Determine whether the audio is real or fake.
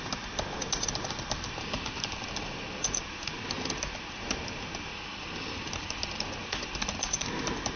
real